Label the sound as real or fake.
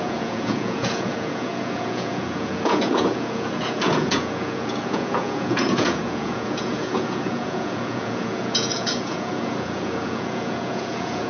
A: fake